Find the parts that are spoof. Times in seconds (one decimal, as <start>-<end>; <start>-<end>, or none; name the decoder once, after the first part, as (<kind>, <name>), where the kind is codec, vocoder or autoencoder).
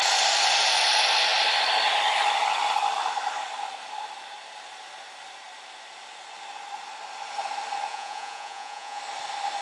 7.9-9.0 (vocoder, Vocos)